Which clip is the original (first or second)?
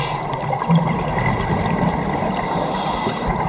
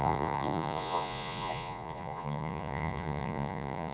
first